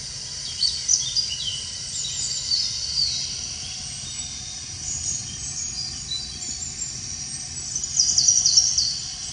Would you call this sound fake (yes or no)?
yes